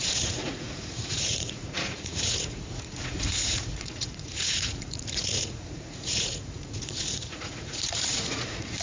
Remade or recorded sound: remade